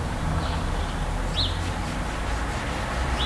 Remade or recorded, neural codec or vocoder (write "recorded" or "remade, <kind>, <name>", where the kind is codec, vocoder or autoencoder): recorded